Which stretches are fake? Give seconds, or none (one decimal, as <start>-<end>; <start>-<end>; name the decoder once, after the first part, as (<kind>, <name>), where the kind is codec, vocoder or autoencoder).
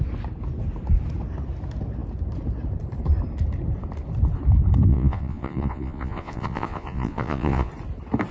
4.9-7.7 (vocoder, Vocos)